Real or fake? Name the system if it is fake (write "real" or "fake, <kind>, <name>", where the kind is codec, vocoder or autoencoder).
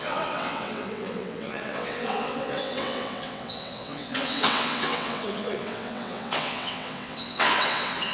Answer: fake, vocoder, WaveNeXt